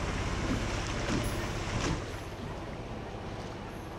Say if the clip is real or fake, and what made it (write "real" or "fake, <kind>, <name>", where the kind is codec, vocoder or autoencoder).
real